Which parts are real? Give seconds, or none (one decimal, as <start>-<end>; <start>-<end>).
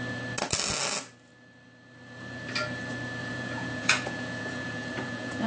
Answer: 0.0-3.2